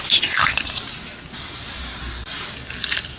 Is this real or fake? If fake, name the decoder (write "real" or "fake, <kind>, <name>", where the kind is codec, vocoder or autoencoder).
real